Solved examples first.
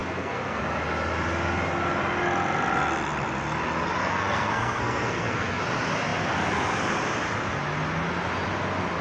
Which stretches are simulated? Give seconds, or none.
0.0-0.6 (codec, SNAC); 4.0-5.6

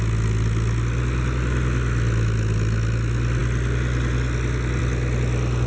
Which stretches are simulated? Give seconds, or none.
none